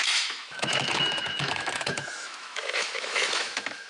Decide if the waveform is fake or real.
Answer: fake